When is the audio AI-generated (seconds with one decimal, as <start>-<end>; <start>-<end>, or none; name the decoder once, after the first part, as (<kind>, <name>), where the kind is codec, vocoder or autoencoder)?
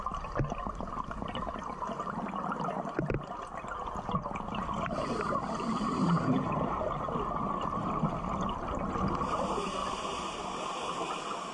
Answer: none